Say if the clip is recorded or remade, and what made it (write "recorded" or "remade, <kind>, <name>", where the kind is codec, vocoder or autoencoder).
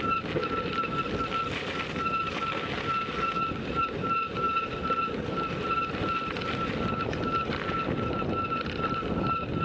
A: recorded